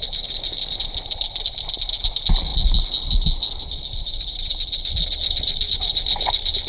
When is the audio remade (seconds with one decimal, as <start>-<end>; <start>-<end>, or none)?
none